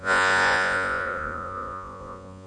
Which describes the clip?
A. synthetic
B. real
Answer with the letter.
A